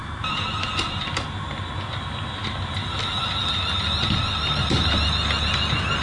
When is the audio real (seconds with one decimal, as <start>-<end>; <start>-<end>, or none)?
2.0-2.4; 3.0-6.0